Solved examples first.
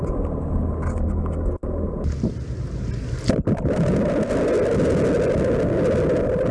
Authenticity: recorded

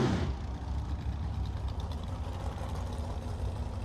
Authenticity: recorded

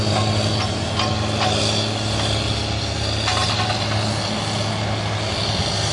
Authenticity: recorded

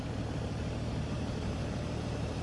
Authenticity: recorded